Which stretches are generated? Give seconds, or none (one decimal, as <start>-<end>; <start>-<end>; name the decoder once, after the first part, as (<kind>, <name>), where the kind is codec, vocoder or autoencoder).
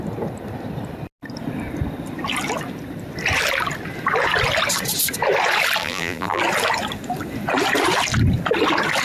5.8-6.4 (vocoder, BigVGAN v2)